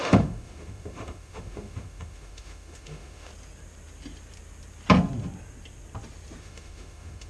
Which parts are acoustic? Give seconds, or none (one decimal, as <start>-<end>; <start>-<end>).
3.3-6.4